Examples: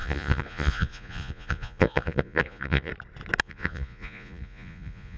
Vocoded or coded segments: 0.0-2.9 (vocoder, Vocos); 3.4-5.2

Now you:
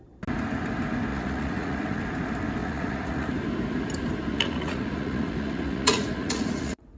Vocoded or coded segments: 1.1-2.0 (vocoder, Vocos); 2.6-3.3; 4.3-7.0

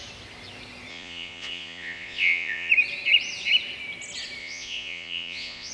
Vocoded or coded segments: 0.9-2.7 (vocoder, Vocos); 4.4-5.7

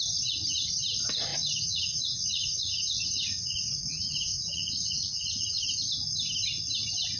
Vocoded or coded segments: 1.3-5.6 (vocoder, Vocos)

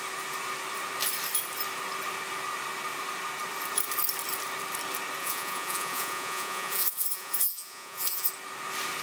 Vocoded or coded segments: 5.2-8.3 (vocoder, Vocos)